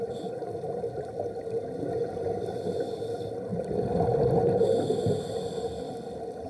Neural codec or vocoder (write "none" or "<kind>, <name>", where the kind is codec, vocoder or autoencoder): none